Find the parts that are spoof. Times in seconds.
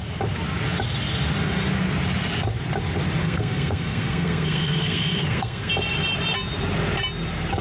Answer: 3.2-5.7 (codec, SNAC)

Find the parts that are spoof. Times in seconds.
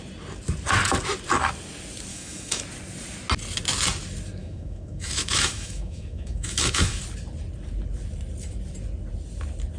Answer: 2.1-2.6 (autoencoder, DAC-VAE); 4.4-7.0